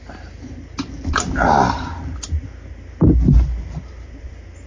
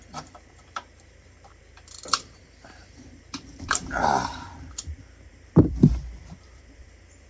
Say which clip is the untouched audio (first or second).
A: first